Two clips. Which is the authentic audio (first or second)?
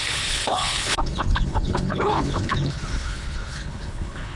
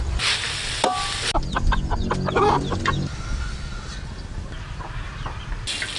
second